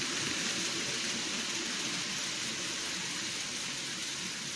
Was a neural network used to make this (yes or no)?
no